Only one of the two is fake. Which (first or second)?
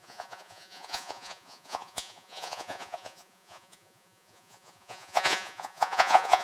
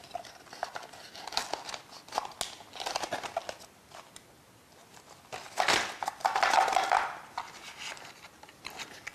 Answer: first